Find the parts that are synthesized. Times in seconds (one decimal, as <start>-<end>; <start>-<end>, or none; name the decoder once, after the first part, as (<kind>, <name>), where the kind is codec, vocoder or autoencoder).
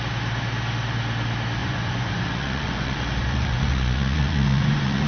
1.6-5.1 (vocoder, Vocos)